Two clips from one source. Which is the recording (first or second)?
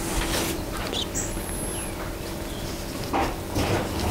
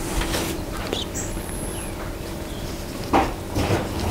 first